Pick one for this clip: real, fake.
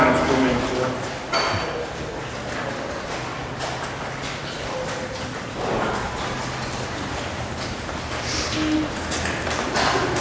real